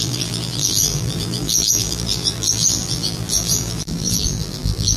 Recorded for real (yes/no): no